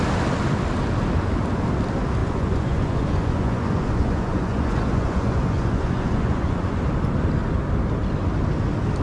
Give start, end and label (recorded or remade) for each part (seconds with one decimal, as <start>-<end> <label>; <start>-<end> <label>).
0.0-2.2 recorded; 2.2-6.8 remade; 6.8-9.0 recorded

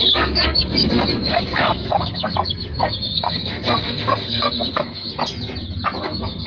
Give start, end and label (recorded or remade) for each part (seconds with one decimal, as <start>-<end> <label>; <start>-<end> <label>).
0.0-5.1 remade; 5.1-6.0 recorded; 6.0-6.5 remade